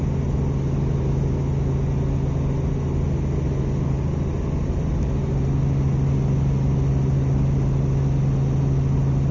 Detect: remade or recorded recorded